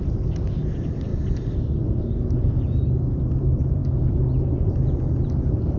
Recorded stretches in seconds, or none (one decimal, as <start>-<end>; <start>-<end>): 1.1-2.3